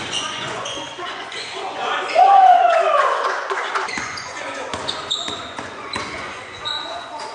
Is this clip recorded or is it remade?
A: remade